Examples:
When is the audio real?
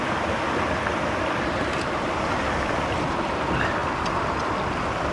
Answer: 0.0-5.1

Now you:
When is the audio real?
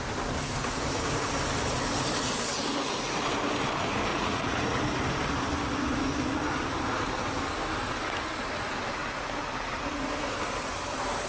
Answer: 0.0-4.1; 4.8-11.3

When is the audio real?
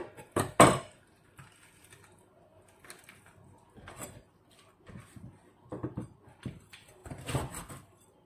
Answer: 0.0-8.3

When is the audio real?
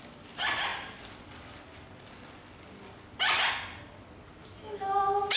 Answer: 0.0-4.4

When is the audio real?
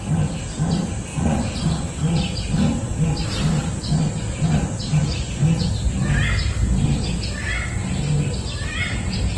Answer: 0.0-1.1; 1.9-5.0; 5.7-9.4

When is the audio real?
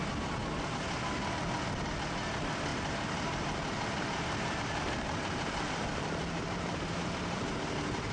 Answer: 0.0-2.7; 7.5-8.1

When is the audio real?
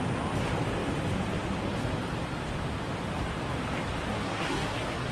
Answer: 0.0-4.1